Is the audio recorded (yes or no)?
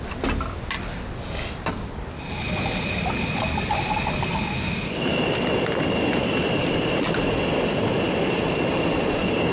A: yes